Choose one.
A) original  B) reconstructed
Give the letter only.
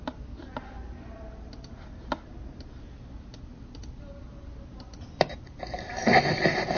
A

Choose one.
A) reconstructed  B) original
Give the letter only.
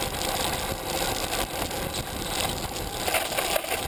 B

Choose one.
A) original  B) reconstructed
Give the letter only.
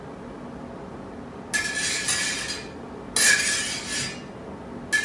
A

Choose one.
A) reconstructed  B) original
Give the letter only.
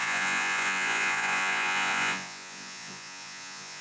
A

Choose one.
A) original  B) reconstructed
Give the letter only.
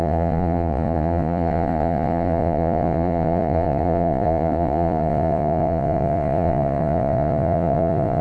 B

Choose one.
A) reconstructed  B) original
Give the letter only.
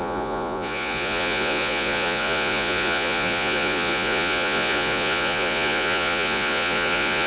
A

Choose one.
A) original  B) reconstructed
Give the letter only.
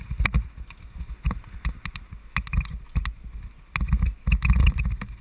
A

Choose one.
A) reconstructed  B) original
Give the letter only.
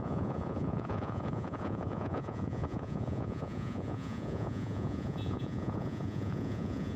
A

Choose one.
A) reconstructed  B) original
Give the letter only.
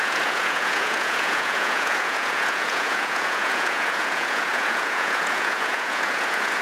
A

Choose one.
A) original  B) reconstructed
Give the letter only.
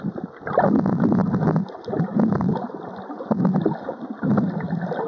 A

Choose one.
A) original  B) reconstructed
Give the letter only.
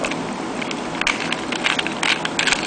A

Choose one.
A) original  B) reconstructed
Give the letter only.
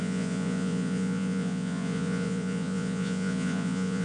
B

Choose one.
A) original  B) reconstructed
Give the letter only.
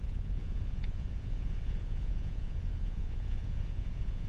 B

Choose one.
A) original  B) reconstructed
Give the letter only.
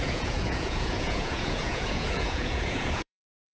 B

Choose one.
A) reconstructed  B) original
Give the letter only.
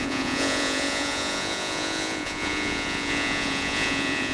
A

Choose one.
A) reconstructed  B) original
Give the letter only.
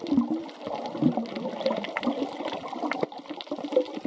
B